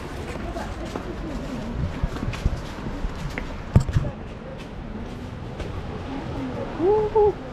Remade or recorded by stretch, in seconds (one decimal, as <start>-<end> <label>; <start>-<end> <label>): 0.0-7.5 recorded